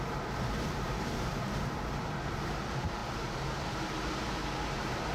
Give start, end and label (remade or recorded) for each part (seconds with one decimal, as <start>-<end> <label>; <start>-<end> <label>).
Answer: 0.0-5.1 recorded